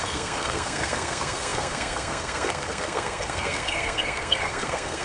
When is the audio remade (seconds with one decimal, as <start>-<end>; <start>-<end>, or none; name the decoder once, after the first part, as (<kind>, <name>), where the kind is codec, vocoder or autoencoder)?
0.0-5.0 (codec, SNAC)